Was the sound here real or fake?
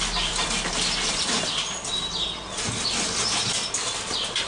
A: fake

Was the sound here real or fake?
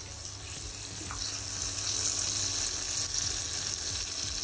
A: real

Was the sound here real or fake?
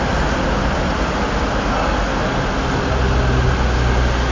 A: real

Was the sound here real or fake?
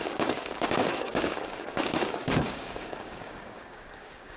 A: fake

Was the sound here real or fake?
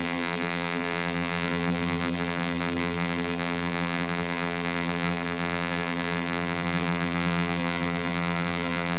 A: fake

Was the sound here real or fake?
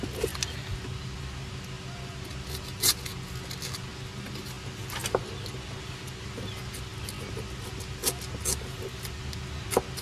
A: real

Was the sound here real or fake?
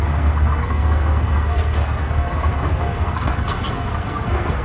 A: fake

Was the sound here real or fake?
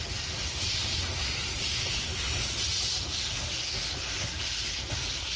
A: real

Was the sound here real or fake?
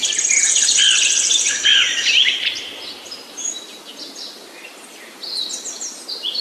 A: real